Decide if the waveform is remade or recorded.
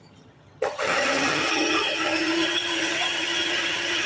remade